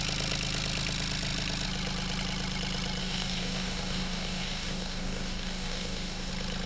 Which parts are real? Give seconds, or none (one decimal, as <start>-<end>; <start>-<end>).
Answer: 0.0-3.0; 6.3-6.7